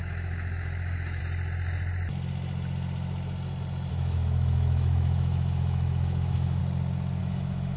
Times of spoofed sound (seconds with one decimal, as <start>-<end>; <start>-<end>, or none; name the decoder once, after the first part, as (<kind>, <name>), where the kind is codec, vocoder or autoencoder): 0.0-1.2 (autoencoder, DAC-VAE); 3.9-6.6; 7.2-7.8